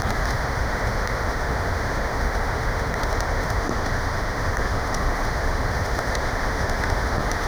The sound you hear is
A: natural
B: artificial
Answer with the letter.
B